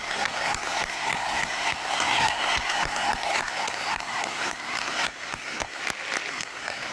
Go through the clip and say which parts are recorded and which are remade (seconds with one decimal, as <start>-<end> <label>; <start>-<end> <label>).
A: 0.0-5.8 remade; 5.8-6.3 recorded; 6.3-6.9 remade